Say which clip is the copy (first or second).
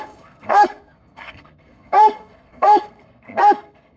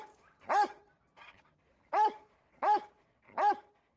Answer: first